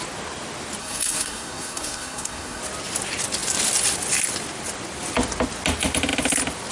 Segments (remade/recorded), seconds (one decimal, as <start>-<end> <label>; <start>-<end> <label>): 0.0-0.8 recorded; 0.8-2.6 remade; 2.6-6.7 recorded